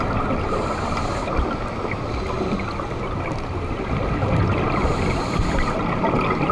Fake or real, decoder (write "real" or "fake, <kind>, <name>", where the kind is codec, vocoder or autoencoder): real